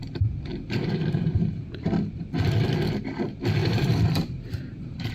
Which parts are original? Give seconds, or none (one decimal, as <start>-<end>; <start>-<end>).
0.0-0.5; 2.3-3.6